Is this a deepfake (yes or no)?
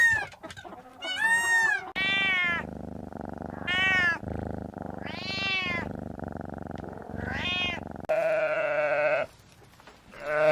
no